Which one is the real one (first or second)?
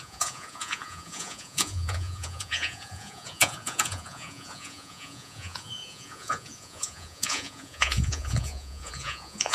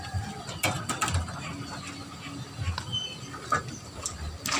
second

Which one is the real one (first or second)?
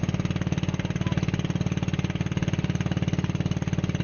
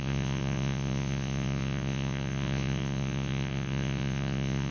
first